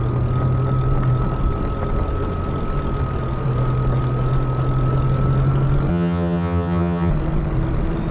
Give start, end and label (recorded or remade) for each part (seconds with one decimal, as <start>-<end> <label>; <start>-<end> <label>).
0.0-5.9 recorded; 5.9-7.1 remade; 7.1-8.1 recorded